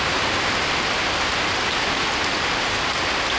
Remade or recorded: recorded